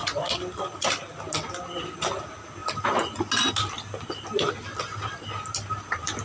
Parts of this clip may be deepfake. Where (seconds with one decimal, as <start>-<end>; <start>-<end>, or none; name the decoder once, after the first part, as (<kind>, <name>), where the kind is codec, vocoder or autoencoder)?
none